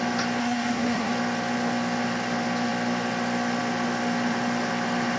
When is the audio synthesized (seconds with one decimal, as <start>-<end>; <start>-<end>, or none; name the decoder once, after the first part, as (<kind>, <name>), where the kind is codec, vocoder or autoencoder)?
0.4-1.1 (codec, SNAC)